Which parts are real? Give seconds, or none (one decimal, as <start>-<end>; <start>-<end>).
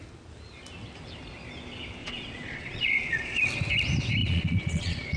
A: 0.0-2.0; 3.4-4.2